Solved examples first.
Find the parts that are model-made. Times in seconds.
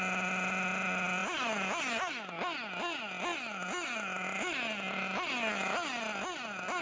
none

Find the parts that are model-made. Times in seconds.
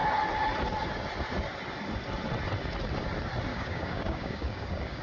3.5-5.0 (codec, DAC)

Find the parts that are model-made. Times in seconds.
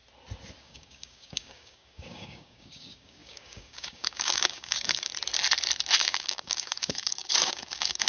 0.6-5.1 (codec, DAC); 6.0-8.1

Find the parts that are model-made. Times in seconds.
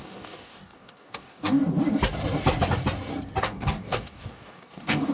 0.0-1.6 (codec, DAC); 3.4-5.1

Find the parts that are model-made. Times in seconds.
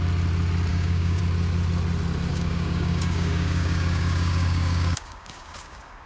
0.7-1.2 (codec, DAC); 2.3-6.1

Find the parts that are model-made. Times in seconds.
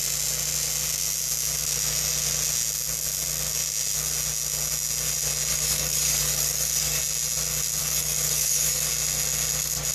5.5-7.0 (codec, DAC); 7.8-8.9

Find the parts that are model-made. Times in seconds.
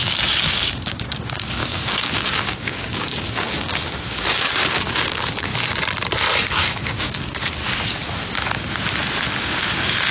0.0-5.5 (codec, DAC); 6.6-7.6; 9.4-10.1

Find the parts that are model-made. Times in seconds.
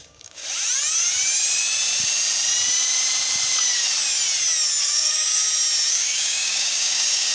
0.0-0.4 (codec, DAC); 4.8-5.4; 5.9-7.3